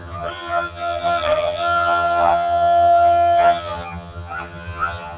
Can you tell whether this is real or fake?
fake